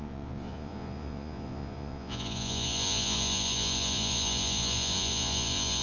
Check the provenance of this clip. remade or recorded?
remade